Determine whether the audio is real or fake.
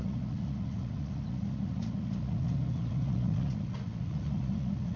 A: fake